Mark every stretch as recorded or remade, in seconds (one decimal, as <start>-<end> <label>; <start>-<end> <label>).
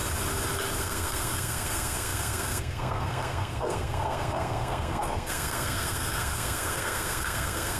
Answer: 0.0-0.8 recorded; 0.8-7.8 remade